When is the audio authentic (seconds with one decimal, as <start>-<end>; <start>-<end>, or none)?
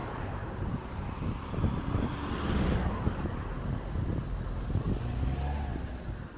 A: 2.3-6.4